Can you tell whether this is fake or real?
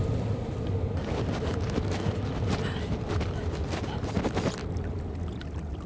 real